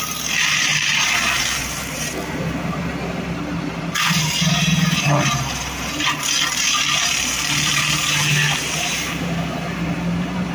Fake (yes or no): yes